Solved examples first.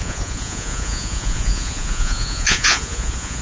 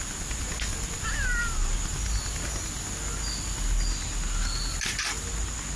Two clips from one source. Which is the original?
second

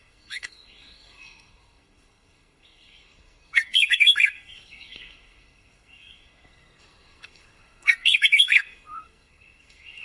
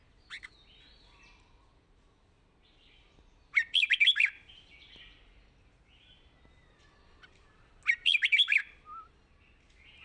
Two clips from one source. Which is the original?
second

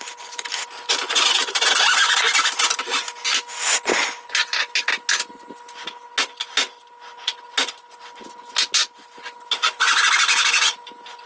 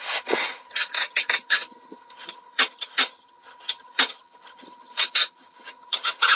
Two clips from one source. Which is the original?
first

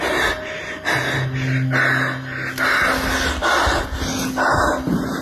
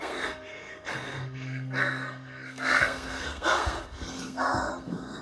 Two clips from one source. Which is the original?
first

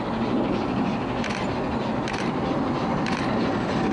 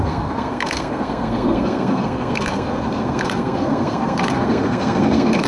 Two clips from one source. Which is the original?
first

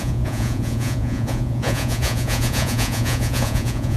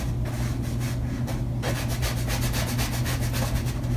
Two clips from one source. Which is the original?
second